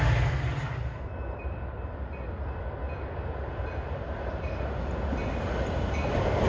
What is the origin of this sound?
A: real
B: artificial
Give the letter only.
A